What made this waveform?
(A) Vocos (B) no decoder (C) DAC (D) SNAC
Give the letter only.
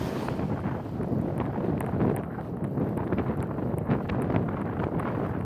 B